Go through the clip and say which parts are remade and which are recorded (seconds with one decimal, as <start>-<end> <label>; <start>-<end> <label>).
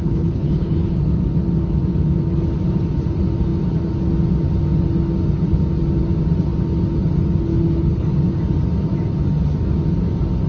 0.0-1.2 remade; 1.2-7.5 recorded; 7.5-8.2 remade; 8.2-10.5 recorded